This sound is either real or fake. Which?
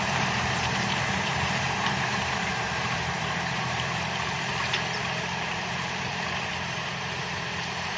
fake